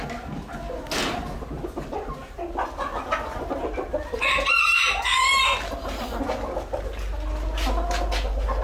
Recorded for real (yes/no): yes